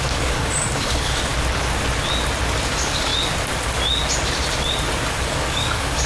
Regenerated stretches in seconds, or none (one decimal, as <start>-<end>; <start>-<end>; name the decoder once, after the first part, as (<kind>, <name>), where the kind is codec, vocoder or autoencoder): 0.0-1.3 (codec, DAC); 2.7-3.1; 5.1-6.1